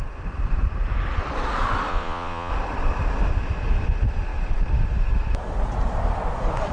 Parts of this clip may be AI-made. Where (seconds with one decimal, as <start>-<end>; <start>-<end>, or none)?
1.9-2.5